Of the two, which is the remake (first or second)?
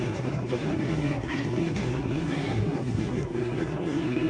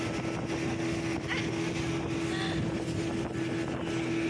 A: first